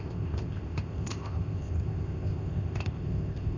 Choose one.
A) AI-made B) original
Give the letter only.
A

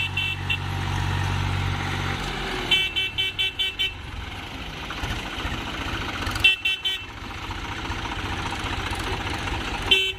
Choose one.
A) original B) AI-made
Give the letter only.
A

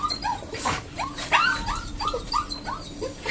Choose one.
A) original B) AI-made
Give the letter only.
A